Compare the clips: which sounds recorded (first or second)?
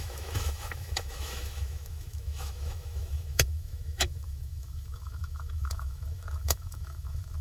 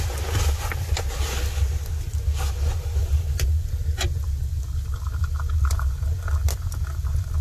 second